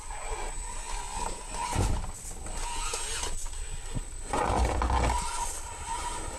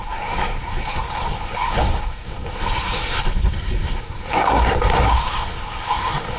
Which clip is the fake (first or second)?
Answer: second